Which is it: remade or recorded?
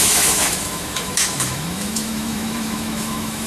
remade